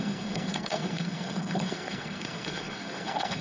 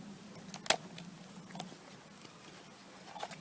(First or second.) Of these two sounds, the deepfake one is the first